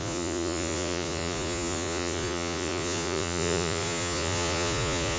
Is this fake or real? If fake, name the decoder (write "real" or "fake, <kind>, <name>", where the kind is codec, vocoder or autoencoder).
fake, vocoder, Vocos